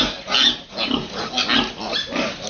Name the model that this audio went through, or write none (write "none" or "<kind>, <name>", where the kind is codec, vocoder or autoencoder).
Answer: none